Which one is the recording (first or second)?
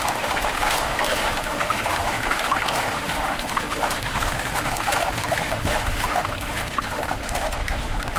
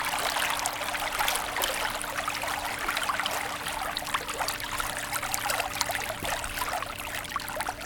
second